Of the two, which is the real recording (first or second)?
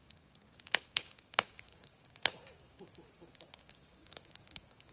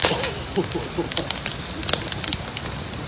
second